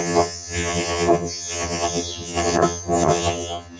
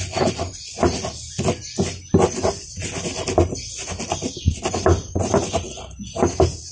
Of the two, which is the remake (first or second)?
first